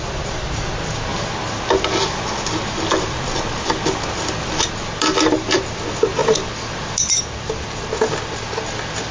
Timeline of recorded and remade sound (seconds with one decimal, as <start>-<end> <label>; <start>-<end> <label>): 0.0-9.1 recorded